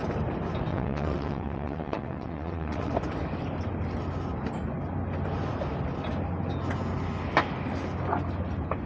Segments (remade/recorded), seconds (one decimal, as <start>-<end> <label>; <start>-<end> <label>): 0.0-0.7 recorded; 0.7-2.9 remade; 2.9-8.9 recorded